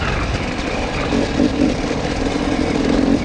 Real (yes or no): no